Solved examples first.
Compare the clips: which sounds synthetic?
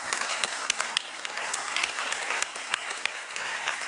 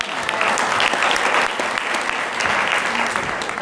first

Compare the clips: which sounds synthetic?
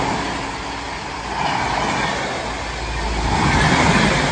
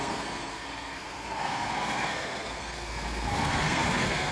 second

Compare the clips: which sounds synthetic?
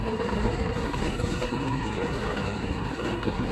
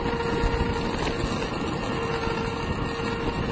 first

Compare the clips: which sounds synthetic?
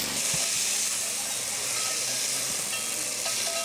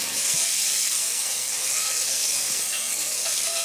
second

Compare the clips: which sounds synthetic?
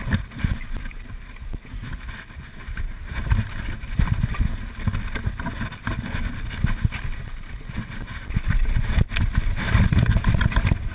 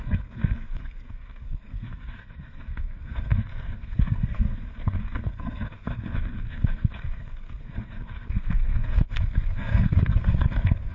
second